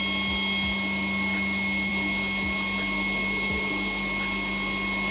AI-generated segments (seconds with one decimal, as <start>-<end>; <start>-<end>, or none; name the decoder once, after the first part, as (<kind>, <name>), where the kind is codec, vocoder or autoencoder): none